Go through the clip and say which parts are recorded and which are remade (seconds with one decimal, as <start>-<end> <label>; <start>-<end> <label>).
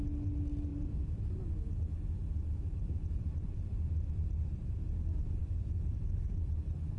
0.0-0.7 recorded; 0.7-1.4 remade; 1.4-2.2 recorded; 2.2-4.6 remade; 4.6-5.4 recorded; 5.4-6.5 remade; 6.5-7.0 recorded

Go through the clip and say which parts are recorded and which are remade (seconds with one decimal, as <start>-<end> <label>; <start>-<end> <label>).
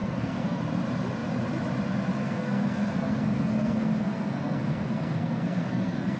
0.0-0.6 remade; 0.6-2.2 recorded; 2.2-6.2 remade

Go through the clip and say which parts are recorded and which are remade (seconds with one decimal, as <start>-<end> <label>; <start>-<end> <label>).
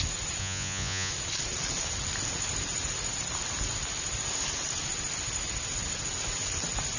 0.0-0.4 recorded; 0.4-1.1 remade; 1.1-7.0 recorded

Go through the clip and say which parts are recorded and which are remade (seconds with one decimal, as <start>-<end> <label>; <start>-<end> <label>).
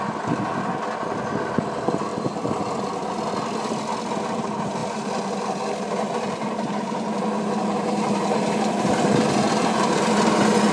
0.0-2.1 recorded; 2.1-3.1 remade; 3.1-4.8 recorded; 4.8-10.1 remade; 10.1-10.7 recorded